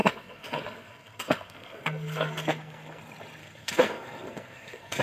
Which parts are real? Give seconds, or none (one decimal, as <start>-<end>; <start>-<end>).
3.0-3.4